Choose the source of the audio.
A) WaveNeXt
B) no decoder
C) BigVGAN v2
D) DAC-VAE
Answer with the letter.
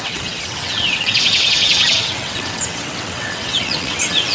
A